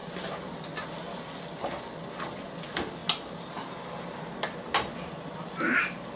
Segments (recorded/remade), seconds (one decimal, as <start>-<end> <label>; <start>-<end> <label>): 0.0-6.2 recorded

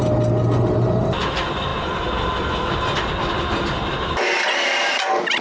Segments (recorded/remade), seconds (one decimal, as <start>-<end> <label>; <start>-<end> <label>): 0.0-5.4 recorded

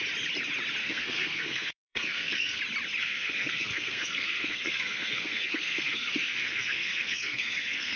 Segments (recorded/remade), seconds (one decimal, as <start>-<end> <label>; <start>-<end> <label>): 0.0-0.8 recorded; 0.8-2.6 remade; 2.6-3.0 recorded; 3.0-8.0 remade

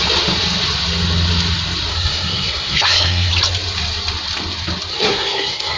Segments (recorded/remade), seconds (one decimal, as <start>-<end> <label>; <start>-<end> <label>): 0.0-1.9 recorded; 1.9-3.3 remade; 3.3-4.9 recorded; 4.9-5.8 remade

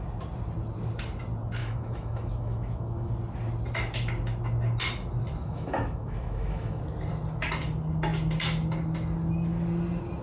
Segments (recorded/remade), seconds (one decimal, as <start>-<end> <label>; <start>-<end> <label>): 0.0-1.6 recorded; 1.6-3.1 remade; 3.1-5.4 recorded; 5.4-6.8 remade; 6.8-10.2 recorded

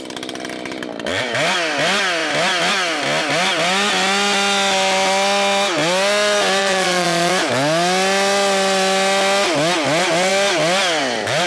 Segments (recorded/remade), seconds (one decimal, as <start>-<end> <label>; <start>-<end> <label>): 0.0-6.6 recorded; 6.6-7.3 remade; 7.3-11.5 recorded

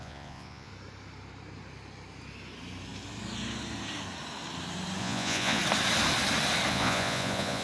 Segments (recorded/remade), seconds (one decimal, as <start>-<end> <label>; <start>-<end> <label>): 0.0-0.7 remade; 0.7-5.0 recorded; 5.0-5.6 remade; 5.6-6.7 recorded; 6.7-7.6 remade